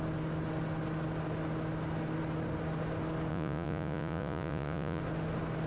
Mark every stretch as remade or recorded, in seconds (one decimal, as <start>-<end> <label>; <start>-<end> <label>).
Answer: 0.0-3.3 recorded; 3.3-5.0 remade; 5.0-5.7 recorded